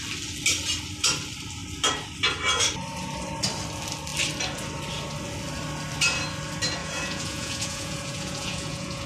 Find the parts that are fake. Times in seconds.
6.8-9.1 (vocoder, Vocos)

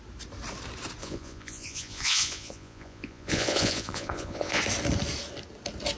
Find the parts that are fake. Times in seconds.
1.0-4.6 (vocoder, Vocos)

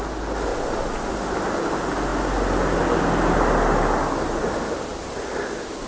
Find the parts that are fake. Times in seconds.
0.5-1.1 (vocoder, Vocos)